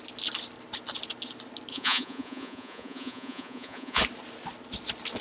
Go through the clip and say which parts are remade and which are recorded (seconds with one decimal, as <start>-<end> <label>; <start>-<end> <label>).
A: 0.0-1.7 recorded; 1.7-4.0 remade; 4.0-5.2 recorded